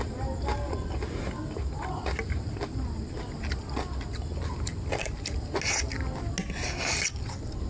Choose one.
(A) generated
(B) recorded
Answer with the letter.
B